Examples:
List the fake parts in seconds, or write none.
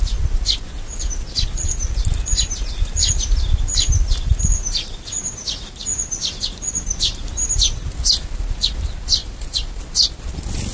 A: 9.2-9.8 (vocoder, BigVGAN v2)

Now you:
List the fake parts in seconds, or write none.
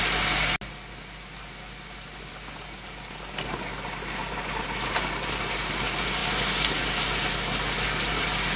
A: none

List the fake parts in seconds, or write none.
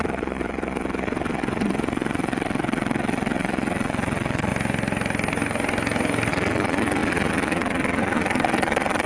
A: 0.0-4.5 (vocoder, Vocos); 6.3-9.1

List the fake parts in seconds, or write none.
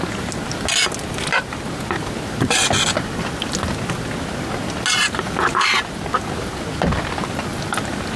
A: none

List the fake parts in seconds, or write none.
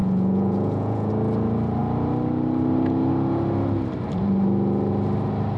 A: 0.0-1.1 (vocoder, Vocos)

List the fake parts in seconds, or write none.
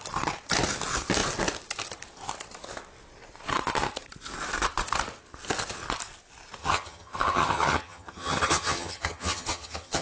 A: 6.6-10.0 (vocoder, HiFi-GAN)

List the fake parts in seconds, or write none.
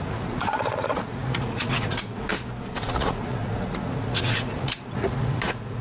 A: 0.0-2.3 (vocoder, Vocos); 2.8-5.8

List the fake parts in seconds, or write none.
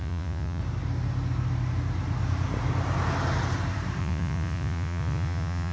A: 0.0-0.6 (vocoder, Vocos); 4.0-5.7